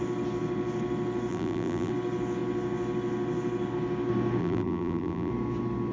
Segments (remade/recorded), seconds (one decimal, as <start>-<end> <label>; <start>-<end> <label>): 0.0-1.3 recorded; 1.3-1.9 remade; 1.9-4.4 recorded; 4.4-5.3 remade; 5.3-5.9 recorded